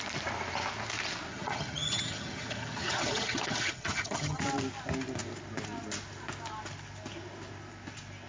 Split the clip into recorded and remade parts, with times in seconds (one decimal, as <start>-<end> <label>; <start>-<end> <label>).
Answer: 0.0-1.3 recorded; 1.3-4.4 remade; 4.4-8.3 recorded